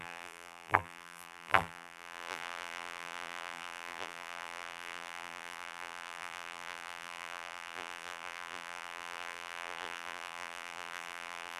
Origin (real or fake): fake